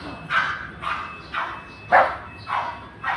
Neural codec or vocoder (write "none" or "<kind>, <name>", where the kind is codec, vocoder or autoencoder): none